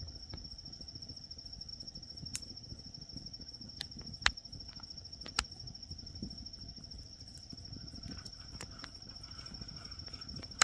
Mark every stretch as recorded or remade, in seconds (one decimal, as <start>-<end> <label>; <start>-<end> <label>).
0.0-10.6 recorded